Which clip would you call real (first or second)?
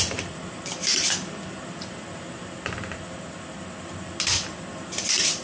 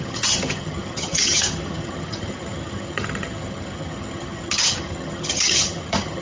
first